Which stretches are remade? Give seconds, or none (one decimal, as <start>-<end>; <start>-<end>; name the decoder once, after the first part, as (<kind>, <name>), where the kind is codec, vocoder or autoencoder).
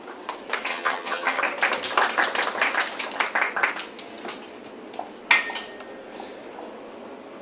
0.7-1.4 (vocoder, HiFi-GAN)